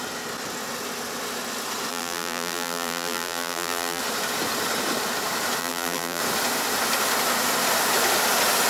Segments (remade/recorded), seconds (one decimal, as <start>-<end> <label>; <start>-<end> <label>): 0.0-1.9 recorded; 1.9-4.0 remade; 4.0-5.6 recorded; 5.6-6.2 remade; 6.2-8.7 recorded